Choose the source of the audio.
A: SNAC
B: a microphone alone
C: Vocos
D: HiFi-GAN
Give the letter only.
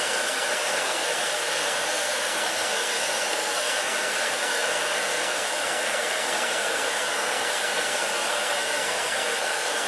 A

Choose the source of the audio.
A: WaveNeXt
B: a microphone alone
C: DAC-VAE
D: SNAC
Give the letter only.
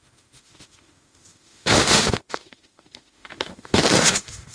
C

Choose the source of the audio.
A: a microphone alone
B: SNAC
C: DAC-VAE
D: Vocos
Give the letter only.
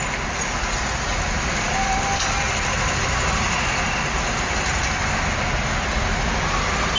A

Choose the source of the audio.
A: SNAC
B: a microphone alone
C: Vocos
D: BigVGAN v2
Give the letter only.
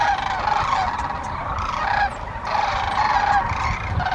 B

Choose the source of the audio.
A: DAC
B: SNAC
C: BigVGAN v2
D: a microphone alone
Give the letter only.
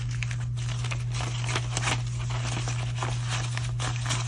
D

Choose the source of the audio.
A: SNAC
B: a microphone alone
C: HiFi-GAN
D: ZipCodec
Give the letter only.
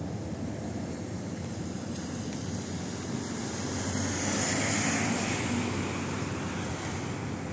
B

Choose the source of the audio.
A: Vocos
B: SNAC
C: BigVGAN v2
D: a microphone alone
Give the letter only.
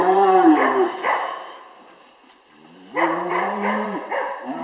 C